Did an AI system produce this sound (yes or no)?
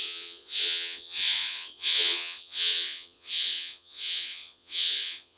yes